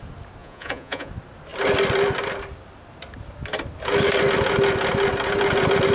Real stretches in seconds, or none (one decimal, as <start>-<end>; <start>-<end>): 0.0-0.4; 1.1-5.9